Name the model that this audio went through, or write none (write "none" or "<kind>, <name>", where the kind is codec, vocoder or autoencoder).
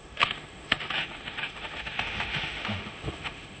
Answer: autoencoder, DAC-VAE